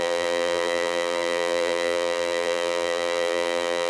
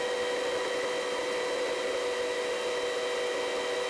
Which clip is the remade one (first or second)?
first